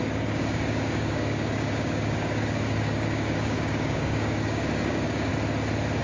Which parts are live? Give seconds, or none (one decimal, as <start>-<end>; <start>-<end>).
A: 5.3-6.0